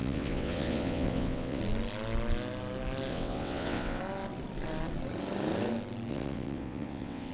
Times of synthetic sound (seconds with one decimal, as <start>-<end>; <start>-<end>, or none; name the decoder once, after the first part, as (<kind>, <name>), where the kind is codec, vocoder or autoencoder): 0.0-1.6 (vocoder, WaveNeXt); 3.1-4.0; 6.1-7.3